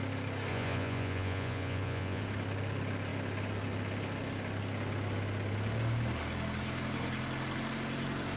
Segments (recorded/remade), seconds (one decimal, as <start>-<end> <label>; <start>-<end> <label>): 0.0-0.5 recorded; 0.5-2.2 remade; 2.2-8.4 recorded